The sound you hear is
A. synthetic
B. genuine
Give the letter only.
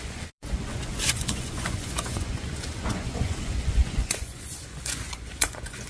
A